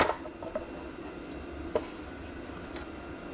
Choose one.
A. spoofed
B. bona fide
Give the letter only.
B